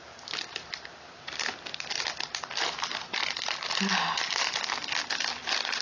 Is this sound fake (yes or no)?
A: no